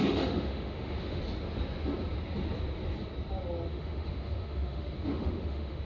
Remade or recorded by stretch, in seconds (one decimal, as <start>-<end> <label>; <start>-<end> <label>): 0.0-1.2 remade; 1.2-3.7 recorded; 3.7-5.8 remade